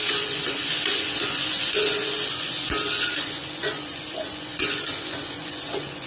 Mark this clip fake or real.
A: fake